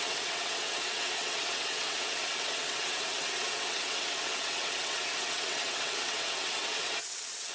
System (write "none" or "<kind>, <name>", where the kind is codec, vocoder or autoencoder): vocoder, WaveNeXt